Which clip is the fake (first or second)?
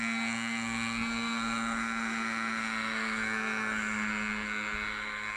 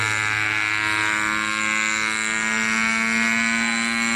first